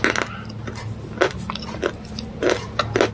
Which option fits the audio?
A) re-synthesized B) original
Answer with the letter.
B